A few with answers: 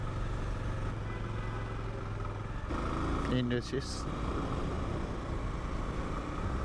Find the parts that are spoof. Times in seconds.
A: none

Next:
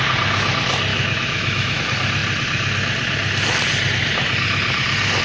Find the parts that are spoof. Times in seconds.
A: 0.9-1.8 (autoencoder, DAC-VAE)

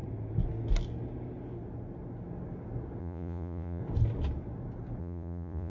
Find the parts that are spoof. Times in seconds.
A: 3.0-3.8 (vocoder, Vocos); 5.0-5.7

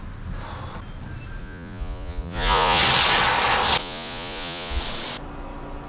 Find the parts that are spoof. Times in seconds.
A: 1.4-2.8 (vocoder, Vocos); 3.8-4.8

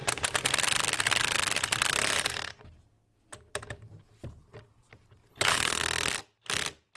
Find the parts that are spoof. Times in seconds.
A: 5.3-5.8 (codec, HILCodec)

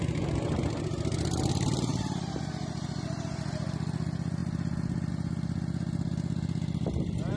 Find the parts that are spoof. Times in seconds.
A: none

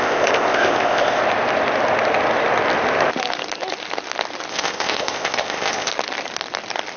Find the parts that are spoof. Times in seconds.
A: 0.0-1.2 (codec, ZipCodec); 4.5-5.9

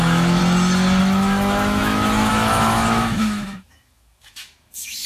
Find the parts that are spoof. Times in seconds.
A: 0.0-0.4 (autoencoder, DAC-VAE); 1.0-5.1